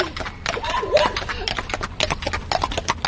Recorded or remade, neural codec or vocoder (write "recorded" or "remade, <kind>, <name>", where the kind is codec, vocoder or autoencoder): recorded